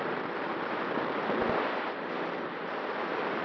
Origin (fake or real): real